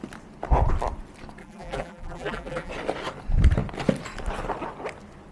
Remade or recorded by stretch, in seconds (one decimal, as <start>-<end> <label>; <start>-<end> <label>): 0.0-1.4 recorded; 1.4-2.7 remade; 2.7-5.3 recorded